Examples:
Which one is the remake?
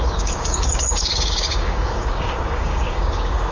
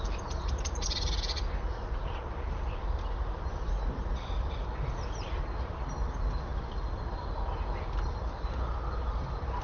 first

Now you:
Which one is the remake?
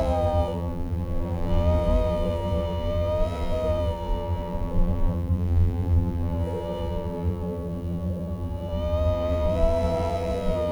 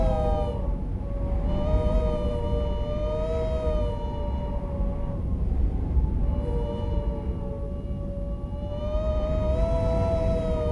first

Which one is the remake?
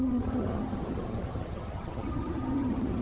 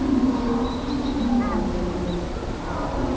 first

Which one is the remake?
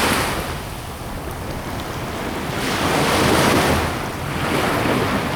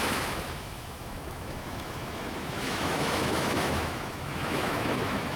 second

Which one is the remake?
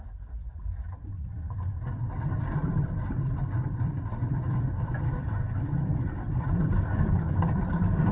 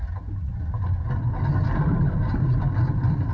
first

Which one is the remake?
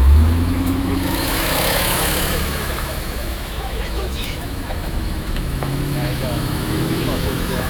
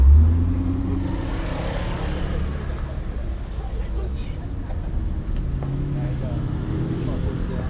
first